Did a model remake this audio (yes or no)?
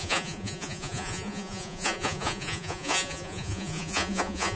yes